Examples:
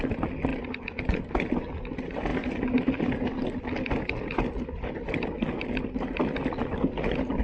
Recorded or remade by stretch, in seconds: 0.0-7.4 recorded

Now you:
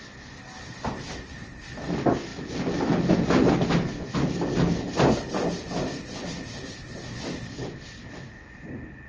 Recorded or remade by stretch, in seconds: 0.0-9.1 recorded

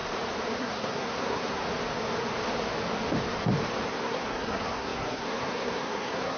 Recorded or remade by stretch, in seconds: 0.0-0.6 recorded; 0.6-1.6 remade; 1.6-3.9 recorded; 3.9-6.4 remade